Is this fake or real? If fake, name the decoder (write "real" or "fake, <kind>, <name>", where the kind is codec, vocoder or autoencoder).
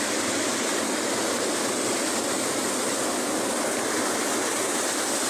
real